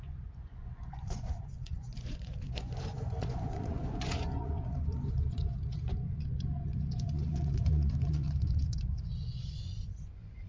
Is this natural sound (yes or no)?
no